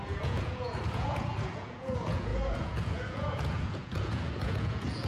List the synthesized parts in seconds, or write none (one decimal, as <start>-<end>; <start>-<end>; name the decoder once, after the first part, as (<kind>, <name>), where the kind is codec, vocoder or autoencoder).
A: 0.0-5.1 (vocoder, Vocos)